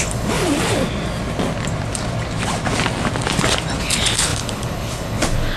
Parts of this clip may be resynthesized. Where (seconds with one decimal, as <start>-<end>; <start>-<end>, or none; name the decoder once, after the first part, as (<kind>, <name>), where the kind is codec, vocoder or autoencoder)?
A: 0.0-0.4 (codec, HILCodec); 3.8-5.6